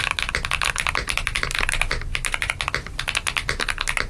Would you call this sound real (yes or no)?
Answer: yes